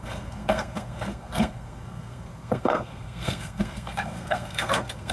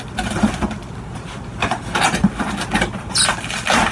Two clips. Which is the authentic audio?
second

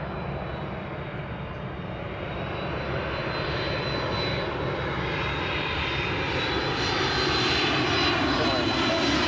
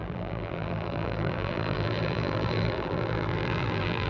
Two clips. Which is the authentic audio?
first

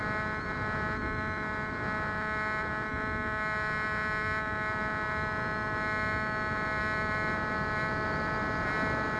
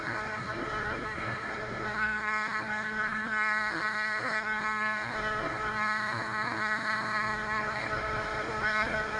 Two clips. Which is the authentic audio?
first